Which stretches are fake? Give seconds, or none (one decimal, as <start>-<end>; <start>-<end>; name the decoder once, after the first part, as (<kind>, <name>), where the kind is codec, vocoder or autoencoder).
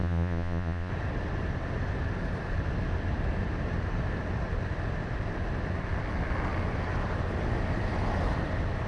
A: 0.0-0.9 (vocoder, Vocos)